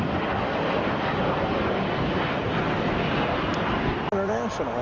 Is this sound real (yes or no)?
yes